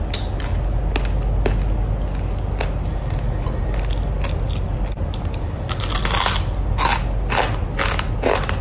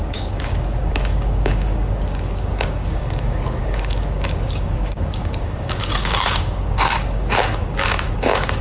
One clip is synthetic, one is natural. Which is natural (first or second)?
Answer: first